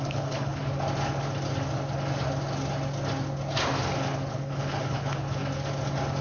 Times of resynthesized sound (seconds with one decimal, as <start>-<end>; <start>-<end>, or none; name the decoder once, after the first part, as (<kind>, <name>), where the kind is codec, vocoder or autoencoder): 0.0-0.6 (codec, HILCodec); 4.3-5.4